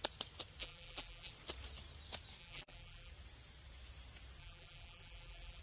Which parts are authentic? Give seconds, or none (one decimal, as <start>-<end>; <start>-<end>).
0.0-0.6; 1.3-2.4; 3.1-4.4